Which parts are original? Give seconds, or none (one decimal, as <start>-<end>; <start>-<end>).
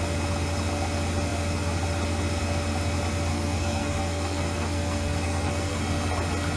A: 0.0-3.3; 5.8-6.6